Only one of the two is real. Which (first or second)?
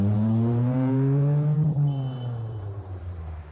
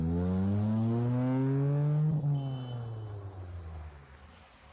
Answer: second